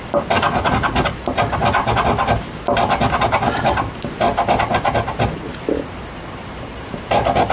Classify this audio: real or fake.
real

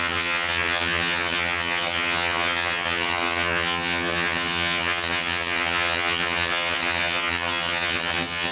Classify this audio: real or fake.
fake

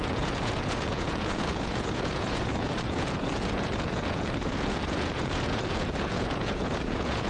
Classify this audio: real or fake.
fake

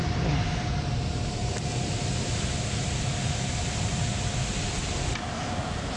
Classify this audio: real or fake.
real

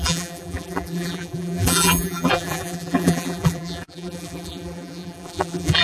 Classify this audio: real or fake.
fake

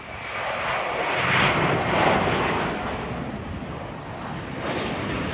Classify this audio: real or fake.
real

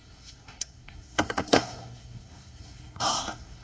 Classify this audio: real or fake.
fake